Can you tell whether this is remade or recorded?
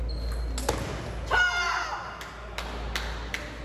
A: recorded